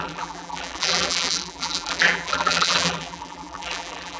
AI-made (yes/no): yes